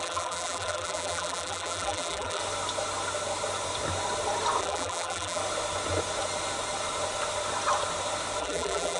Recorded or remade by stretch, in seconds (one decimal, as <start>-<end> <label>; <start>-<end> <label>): 0.0-2.4 remade; 2.4-4.6 recorded; 4.6-5.4 remade; 5.4-8.4 recorded; 8.4-9.0 remade